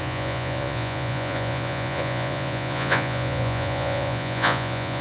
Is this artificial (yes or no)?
yes